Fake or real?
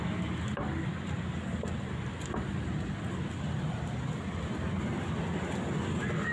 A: real